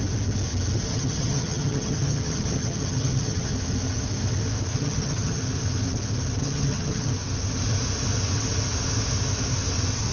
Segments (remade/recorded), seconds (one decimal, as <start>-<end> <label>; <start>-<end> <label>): 0.0-0.9 recorded; 0.9-3.5 remade; 3.5-4.7 recorded; 4.7-5.4 remade; 5.4-6.4 recorded; 6.4-7.1 remade; 7.1-10.1 recorded

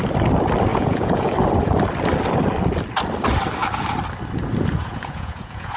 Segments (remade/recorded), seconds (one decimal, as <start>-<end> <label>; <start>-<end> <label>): 0.0-0.7 recorded; 0.7-1.3 remade; 1.3-4.8 recorded; 4.8-5.8 remade

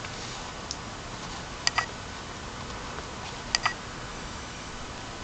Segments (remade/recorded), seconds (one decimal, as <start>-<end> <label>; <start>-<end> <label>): 0.0-4.1 recorded; 4.1-4.7 remade; 4.7-5.2 recorded